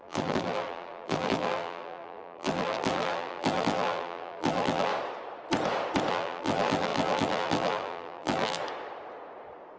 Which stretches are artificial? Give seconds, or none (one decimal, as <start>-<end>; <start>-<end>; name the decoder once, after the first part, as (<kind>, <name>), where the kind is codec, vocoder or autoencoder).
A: 0.0-4.9 (vocoder, BigVGAN v2); 6.1-8.6